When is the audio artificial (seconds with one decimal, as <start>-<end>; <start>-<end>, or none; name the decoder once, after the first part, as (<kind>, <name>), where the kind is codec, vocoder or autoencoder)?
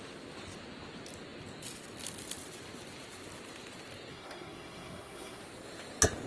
4.1-5.4 (codec, SNAC)